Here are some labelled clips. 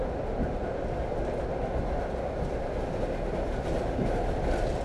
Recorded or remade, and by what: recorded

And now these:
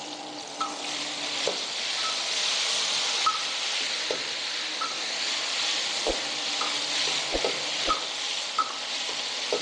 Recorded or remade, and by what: recorded